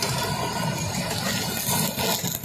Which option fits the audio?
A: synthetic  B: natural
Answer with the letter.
B